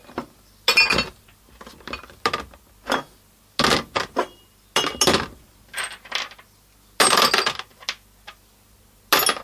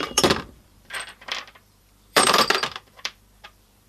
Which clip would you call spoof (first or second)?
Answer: second